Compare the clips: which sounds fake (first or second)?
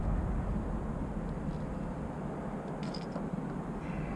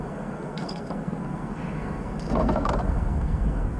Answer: second